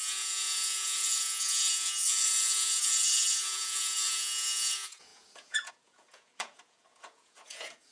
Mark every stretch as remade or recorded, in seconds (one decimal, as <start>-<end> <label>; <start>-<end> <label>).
0.0-7.9 remade